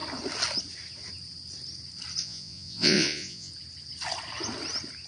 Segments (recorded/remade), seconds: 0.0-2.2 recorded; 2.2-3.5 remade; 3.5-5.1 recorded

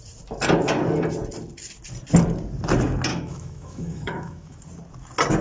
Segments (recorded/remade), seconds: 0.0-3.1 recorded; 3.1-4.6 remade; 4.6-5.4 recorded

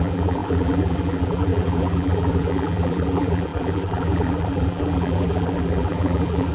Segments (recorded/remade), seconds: 0.0-6.5 remade

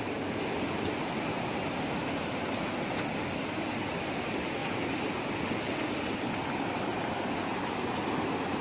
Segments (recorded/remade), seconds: 0.0-8.6 recorded

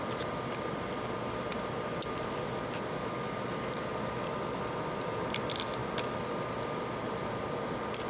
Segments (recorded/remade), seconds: 0.0-8.1 recorded